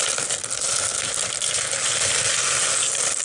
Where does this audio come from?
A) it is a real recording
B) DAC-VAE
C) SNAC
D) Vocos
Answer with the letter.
A